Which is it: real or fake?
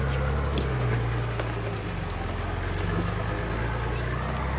real